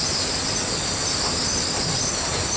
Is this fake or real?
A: real